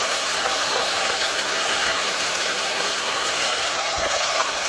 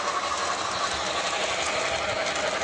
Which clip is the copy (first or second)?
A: first